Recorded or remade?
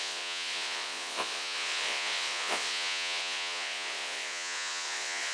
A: remade